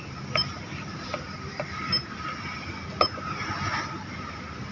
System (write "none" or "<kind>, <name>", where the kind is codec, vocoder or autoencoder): none